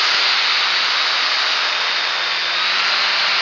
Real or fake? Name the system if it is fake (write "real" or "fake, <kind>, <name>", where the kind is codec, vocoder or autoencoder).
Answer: real